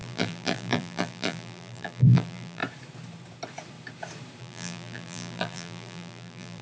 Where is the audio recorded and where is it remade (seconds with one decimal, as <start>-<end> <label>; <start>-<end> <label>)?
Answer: 0.0-2.6 remade; 2.6-4.4 recorded; 4.4-6.6 remade